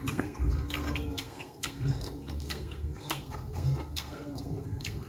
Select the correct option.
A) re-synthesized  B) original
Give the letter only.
A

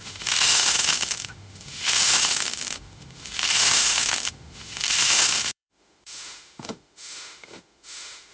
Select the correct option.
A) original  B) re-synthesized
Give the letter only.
B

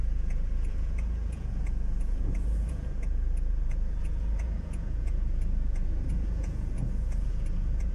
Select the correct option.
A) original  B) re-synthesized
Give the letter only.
B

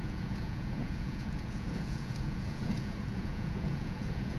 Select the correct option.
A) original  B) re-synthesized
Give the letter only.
B